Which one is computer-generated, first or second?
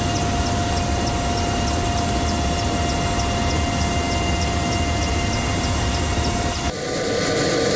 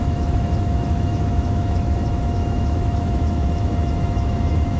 second